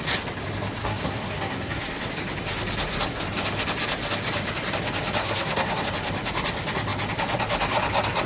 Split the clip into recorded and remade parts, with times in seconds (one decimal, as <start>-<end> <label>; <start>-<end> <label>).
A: 0.0-0.8 recorded; 0.8-2.1 remade; 2.1-5.2 recorded; 5.2-5.8 remade; 5.8-8.3 recorded